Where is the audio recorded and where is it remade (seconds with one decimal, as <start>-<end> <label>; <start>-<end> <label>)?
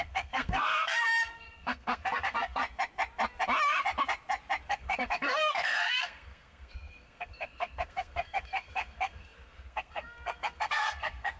0.0-2.6 remade; 2.6-4.7 recorded; 4.7-11.4 remade